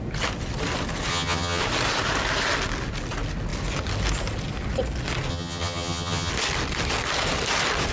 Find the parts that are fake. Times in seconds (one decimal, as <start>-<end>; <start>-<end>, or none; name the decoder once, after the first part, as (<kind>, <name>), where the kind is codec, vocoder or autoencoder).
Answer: 1.1-1.6 (vocoder, HiFi-GAN); 5.3-6.3